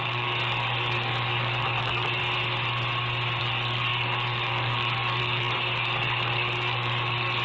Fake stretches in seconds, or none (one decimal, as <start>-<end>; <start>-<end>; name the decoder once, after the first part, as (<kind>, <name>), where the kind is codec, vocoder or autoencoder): 0.0-2.2 (codec, DAC); 3.4-7.4